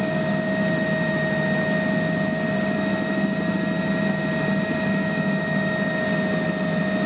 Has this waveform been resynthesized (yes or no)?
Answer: no